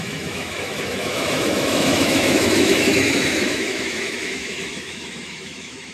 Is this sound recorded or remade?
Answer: remade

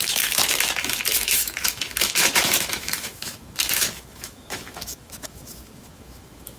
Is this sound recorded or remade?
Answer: remade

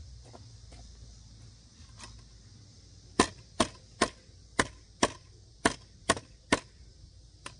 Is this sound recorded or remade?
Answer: recorded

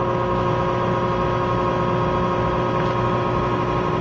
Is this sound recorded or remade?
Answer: recorded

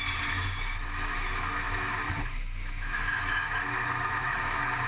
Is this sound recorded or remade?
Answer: remade